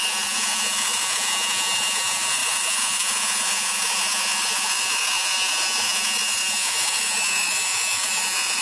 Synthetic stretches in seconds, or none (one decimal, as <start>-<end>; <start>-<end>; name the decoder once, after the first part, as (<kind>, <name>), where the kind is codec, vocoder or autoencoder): 0.0-8.6 (vocoder, Vocos)